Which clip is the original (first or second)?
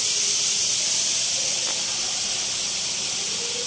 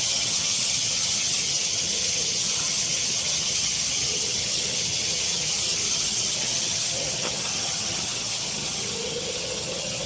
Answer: first